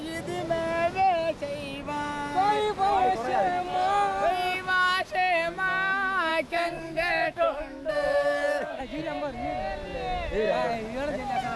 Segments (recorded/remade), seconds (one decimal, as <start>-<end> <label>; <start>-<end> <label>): 0.0-6.3 recorded; 6.3-8.8 remade; 8.8-11.6 recorded

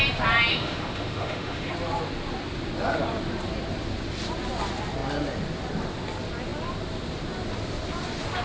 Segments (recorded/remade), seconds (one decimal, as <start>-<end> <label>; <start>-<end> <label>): 0.0-0.5 recorded; 0.5-1.7 remade; 1.7-8.4 recorded

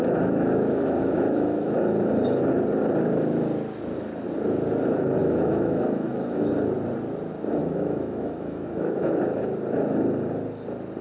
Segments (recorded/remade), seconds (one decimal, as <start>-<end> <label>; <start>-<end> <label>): 0.0-1.8 remade; 1.8-5.2 recorded; 5.2-6.5 remade; 6.5-7.6 recorded; 7.6-9.2 remade; 9.2-11.0 recorded

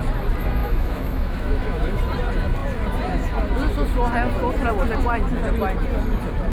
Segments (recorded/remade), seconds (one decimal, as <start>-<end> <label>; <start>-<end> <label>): 0.0-0.6 recorded; 0.6-2.0 remade; 2.0-6.5 recorded